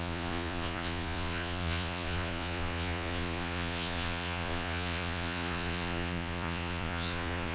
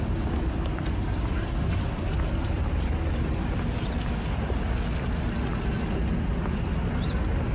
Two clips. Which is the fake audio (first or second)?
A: first